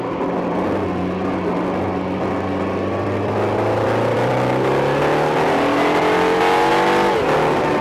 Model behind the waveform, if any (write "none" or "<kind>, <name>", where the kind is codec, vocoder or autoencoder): none